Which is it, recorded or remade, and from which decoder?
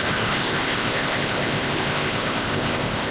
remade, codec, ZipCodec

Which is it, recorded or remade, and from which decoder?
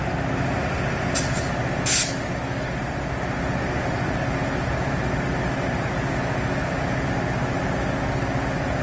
recorded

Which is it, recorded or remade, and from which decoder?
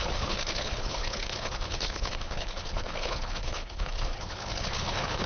remade, codec, HILCodec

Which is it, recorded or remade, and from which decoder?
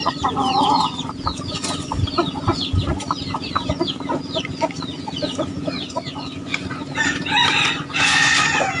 remade, vocoder, Vocos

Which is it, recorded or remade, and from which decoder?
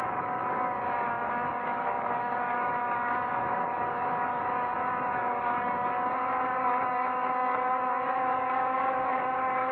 remade, codec, DAC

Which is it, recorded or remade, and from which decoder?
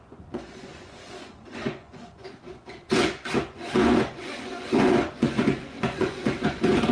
remade, vocoder, Vocos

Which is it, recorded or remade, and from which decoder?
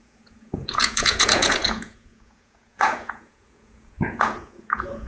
remade, vocoder, Vocos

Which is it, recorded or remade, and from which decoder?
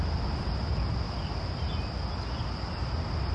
recorded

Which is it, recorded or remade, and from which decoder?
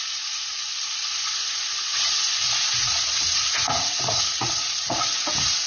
remade, vocoder, Vocos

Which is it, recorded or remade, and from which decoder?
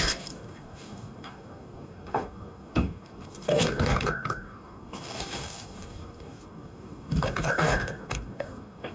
remade, codec, DAC